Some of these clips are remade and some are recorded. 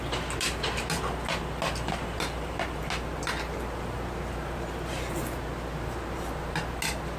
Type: recorded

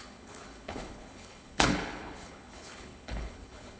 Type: remade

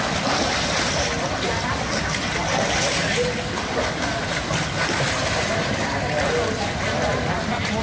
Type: recorded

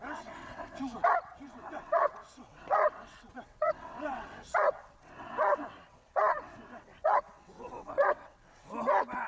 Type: remade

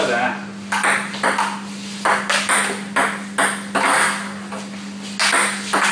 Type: recorded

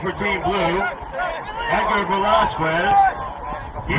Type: recorded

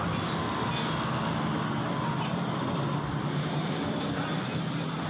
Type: recorded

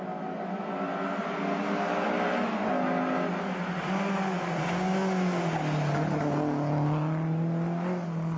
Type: recorded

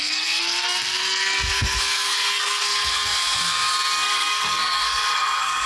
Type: remade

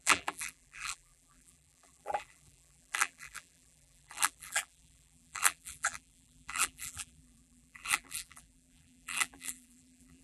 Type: remade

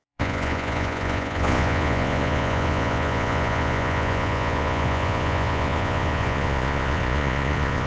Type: remade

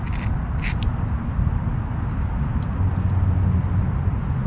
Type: recorded